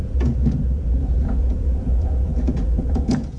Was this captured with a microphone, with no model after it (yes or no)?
no